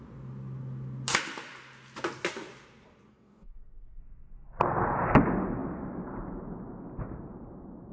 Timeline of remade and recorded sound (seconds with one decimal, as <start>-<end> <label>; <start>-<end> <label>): 0.0-3.1 recorded; 3.1-4.0 remade; 4.0-7.9 recorded